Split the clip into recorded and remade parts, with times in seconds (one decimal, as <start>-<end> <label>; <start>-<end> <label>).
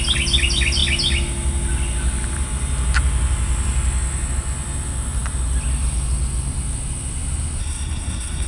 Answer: 0.0-7.6 recorded; 7.6-8.5 remade